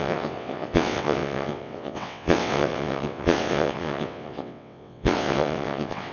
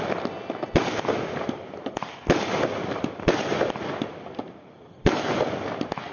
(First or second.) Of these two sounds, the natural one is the second